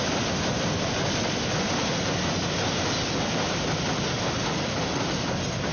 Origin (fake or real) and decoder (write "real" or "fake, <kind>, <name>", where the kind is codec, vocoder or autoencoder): real